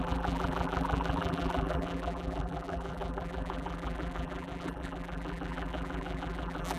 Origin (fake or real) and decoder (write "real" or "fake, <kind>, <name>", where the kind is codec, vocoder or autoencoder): fake, vocoder, BigVGAN v2